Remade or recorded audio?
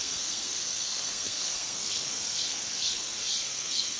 remade